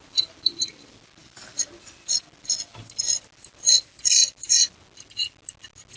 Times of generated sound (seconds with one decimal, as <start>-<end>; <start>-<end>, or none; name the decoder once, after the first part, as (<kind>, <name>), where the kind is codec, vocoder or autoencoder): none